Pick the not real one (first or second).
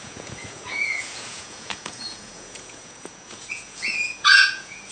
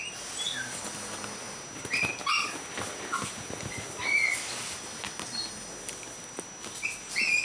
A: first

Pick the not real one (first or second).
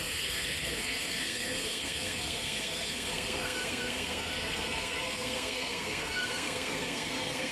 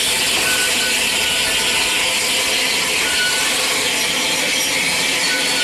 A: first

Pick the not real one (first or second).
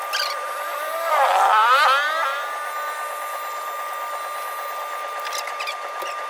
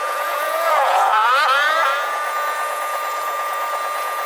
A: second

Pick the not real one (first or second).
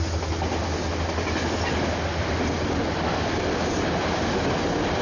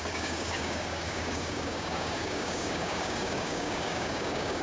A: second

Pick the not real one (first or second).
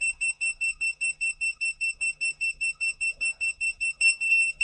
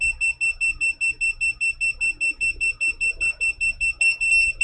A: first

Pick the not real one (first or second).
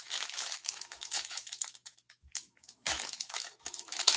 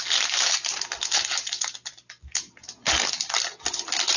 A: first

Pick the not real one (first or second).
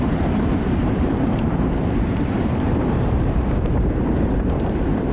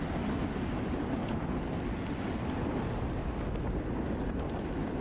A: first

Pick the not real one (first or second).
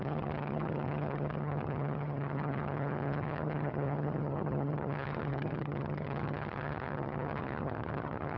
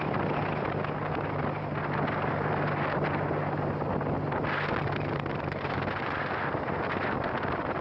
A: first